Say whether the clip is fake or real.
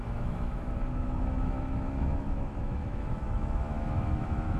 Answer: fake